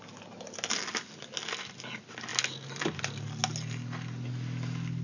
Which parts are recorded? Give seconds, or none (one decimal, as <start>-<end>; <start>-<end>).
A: 0.0-5.0